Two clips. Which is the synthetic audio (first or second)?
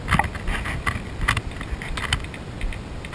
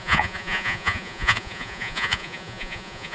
second